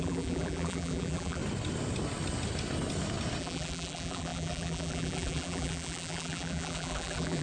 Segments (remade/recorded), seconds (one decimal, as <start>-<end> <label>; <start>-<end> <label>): 0.0-1.4 remade; 1.4-3.4 recorded; 3.4-7.4 remade